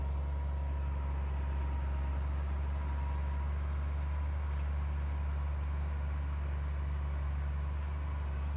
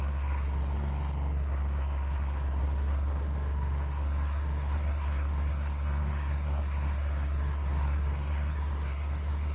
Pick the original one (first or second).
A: first